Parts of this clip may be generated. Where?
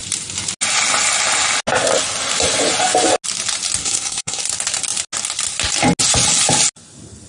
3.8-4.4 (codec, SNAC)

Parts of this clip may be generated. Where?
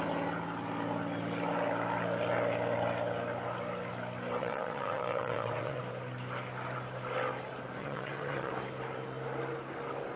4.4-5.8 (vocoder, WaveNeXt); 7.8-8.5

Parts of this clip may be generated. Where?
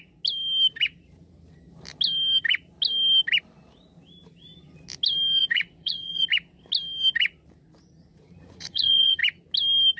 5.4-6.3 (vocoder, Vocos); 8.1-9.2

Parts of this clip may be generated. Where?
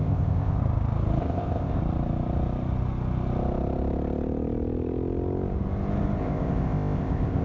0.0-0.6 (codec, ZipCodec); 1.2-1.8; 6.2-7.4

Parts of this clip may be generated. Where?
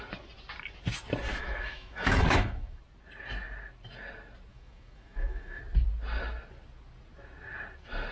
1.3-2.8 (autoencoder, DAC-VAE); 4.5-5.6